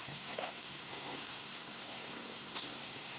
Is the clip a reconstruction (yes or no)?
yes